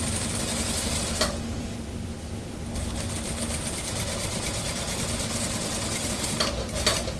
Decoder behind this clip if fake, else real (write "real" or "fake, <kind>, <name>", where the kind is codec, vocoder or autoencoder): fake, vocoder, BigVGAN v2